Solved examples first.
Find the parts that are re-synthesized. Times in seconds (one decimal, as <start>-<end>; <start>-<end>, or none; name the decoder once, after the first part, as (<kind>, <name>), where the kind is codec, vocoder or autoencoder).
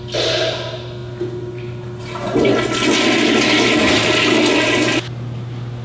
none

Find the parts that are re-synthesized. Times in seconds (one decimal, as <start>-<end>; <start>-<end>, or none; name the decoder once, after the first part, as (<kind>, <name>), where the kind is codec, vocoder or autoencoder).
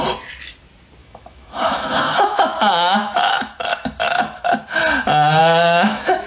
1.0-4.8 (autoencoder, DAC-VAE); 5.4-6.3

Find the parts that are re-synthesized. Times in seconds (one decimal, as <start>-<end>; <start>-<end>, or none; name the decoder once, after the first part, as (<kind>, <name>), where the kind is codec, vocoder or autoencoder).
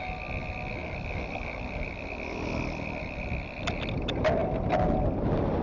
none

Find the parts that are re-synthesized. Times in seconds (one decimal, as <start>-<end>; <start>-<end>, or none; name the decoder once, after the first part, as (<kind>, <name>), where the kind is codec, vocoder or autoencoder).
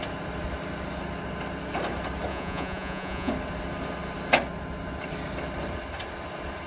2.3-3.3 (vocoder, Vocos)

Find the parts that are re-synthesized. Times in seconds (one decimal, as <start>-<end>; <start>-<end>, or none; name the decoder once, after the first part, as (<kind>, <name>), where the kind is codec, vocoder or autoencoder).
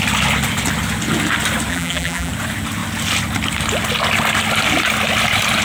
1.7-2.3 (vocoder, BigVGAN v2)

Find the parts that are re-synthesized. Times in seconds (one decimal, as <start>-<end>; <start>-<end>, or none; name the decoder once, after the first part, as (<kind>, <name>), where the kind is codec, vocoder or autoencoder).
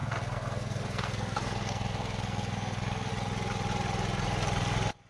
0.0-3.1 (codec, SNAC)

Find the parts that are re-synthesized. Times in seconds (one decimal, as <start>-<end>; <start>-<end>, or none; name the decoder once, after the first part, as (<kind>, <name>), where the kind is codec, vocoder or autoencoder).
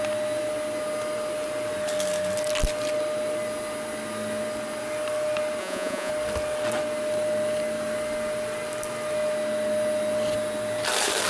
5.6-6.1 (vocoder, Vocos)